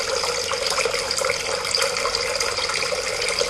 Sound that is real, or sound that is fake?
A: real